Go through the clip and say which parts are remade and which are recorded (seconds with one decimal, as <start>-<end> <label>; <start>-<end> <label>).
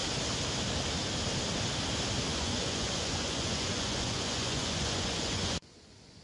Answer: 0.0-2.3 recorded; 2.3-6.2 remade